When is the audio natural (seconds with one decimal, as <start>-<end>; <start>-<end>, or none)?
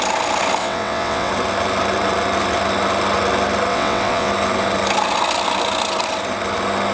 0.0-0.6; 1.3-3.7; 4.3-6.9